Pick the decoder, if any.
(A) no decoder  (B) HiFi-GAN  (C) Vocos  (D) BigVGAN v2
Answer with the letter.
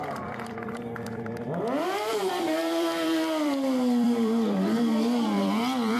D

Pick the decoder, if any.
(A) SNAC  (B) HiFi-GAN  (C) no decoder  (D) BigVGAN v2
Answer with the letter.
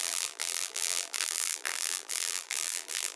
D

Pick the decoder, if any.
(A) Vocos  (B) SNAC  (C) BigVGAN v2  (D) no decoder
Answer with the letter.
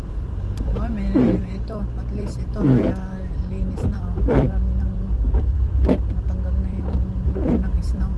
C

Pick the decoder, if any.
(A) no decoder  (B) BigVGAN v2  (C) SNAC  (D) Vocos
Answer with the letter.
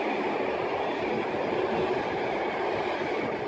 A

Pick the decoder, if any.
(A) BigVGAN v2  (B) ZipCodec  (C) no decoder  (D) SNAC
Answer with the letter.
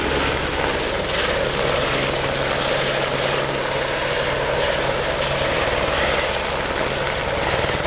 C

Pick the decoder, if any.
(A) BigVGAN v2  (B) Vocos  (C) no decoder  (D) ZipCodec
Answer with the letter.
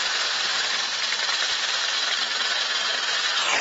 A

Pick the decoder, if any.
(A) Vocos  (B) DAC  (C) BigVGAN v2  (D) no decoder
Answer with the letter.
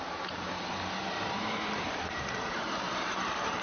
C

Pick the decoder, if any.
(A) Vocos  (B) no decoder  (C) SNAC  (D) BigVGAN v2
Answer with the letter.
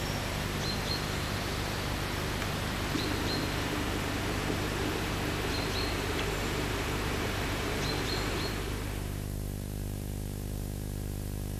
D